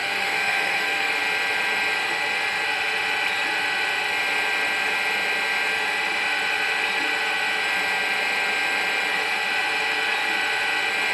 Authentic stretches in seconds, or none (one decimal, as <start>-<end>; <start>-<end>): 1.1-11.1